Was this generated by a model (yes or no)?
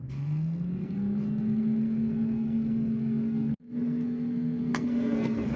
yes